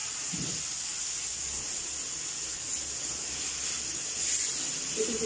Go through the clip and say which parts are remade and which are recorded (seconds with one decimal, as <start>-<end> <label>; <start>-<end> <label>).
0.0-0.6 remade; 0.6-5.3 recorded